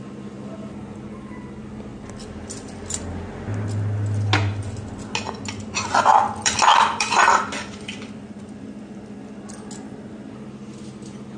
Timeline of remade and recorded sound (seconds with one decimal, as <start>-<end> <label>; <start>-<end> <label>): 0.0-1.9 recorded; 1.9-3.0 remade; 3.0-6.1 recorded; 6.1-8.4 remade; 8.4-11.4 recorded